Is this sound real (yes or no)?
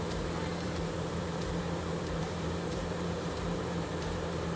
no